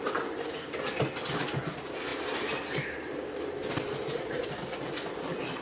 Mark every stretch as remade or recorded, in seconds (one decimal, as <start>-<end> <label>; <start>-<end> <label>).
0.0-2.1 recorded; 2.1-3.4 remade; 3.4-5.6 recorded